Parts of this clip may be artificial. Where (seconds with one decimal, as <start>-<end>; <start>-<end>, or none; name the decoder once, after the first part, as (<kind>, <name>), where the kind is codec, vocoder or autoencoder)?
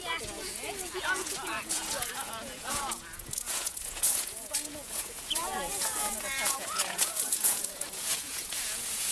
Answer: 0.0-9.1 (vocoder, Vocos)